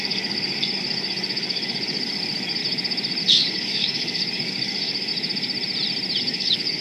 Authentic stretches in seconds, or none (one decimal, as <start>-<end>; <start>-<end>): 2.6-3.2; 5.1-6.2